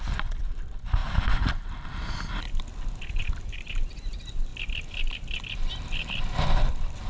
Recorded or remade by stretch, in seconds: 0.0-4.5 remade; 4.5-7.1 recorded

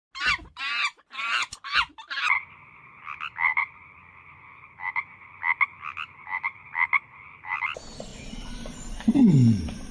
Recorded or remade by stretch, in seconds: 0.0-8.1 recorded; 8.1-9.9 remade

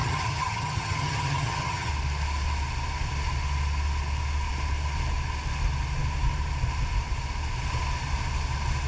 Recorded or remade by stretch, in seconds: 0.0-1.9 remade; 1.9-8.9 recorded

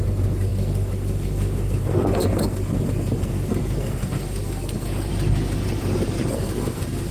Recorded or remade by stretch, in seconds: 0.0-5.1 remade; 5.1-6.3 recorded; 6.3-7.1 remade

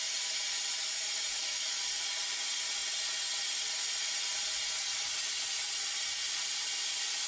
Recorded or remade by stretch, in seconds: 0.0-7.3 recorded

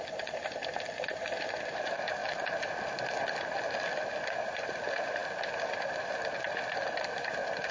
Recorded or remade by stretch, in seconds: 0.0-7.7 remade

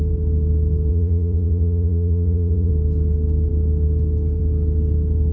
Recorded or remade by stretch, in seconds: 0.0-0.9 recorded; 0.9-2.7 remade; 2.7-5.3 recorded